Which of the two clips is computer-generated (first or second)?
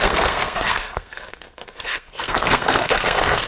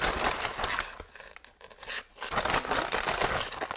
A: first